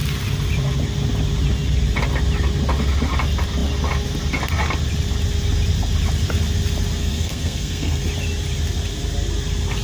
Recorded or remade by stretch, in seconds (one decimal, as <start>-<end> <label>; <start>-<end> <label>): 0.0-7.0 recorded; 7.0-8.1 remade; 8.1-9.8 recorded